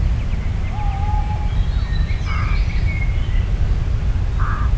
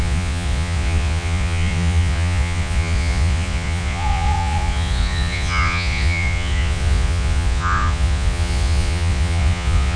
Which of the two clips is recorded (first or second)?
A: first